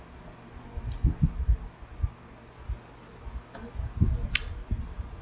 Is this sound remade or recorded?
recorded